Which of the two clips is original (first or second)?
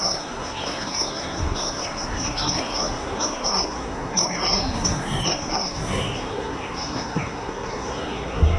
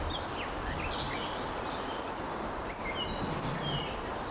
second